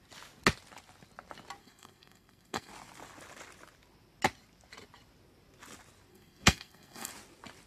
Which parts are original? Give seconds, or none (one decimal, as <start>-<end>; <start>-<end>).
0.0-1.6; 2.7-6.1; 7.1-7.7